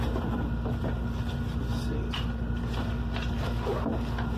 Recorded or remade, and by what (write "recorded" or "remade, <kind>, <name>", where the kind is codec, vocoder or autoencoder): recorded